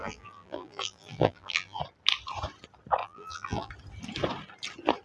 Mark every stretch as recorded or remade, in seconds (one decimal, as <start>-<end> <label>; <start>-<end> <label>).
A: 0.0-1.8 remade; 1.8-3.0 recorded; 3.0-3.7 remade; 3.7-5.0 recorded